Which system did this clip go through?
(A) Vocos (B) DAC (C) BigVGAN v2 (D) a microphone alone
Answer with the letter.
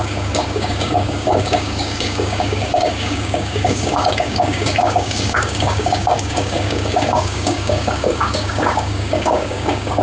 B